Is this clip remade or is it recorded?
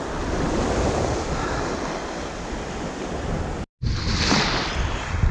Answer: recorded